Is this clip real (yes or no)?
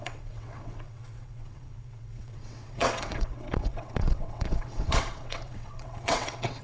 no